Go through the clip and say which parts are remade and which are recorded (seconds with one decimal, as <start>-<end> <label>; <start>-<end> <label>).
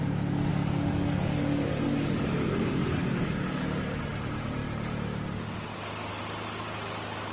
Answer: 0.0-0.5 recorded; 0.5-3.8 remade; 3.8-7.3 recorded